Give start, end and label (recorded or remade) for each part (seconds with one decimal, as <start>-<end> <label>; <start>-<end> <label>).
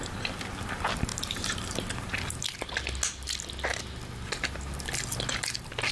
0.0-5.9 recorded